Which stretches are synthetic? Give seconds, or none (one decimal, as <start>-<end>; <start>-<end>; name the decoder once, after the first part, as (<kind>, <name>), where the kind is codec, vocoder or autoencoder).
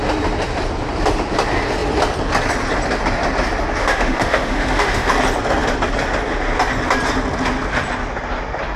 3.8-5.1 (autoencoder, DAC-VAE)